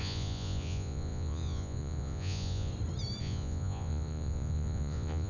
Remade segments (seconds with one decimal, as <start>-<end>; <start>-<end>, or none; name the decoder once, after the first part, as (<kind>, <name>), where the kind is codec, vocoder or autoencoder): 0.0-2.7 (vocoder, Vocos); 3.2-5.3